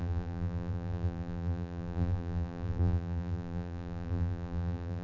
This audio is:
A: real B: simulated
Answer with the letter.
B